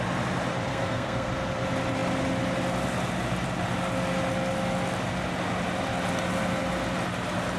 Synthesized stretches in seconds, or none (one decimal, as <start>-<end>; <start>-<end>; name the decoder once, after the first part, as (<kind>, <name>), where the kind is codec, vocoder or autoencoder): 0.7-1.3 (codec, SNAC)